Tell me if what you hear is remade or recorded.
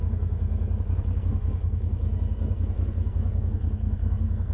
remade